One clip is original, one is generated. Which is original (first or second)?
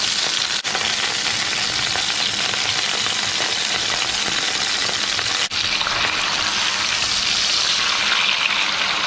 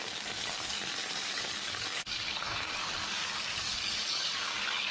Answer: first